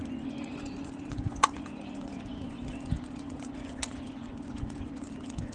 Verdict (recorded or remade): remade